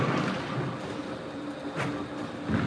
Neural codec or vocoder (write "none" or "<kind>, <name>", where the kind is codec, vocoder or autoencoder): none